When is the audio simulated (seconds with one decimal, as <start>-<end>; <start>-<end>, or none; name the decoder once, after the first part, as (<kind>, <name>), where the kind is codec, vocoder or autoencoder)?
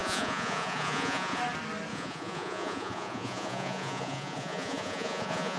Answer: 0.0-1.4 (vocoder, Vocos); 1.9-5.6